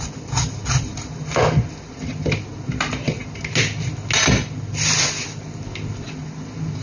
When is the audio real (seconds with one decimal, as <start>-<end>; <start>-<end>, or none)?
0.0-6.8